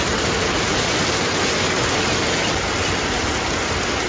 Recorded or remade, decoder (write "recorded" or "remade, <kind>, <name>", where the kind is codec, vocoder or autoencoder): recorded